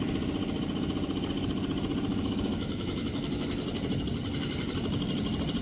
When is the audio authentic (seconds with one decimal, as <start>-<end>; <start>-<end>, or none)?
0.0-2.1; 3.3-5.6